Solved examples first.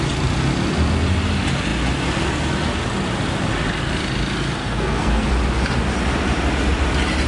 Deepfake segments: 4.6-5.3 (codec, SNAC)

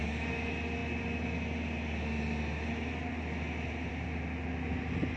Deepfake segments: none